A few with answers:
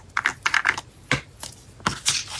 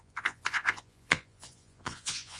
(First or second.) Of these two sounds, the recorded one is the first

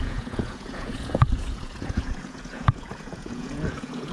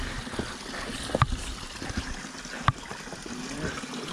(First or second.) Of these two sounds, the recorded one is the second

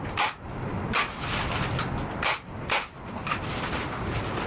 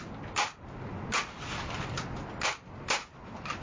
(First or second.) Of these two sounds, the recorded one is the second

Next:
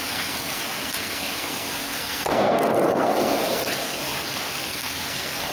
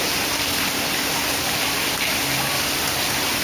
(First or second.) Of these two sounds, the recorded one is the second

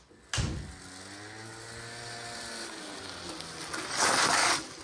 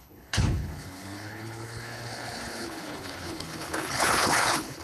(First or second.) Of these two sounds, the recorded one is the first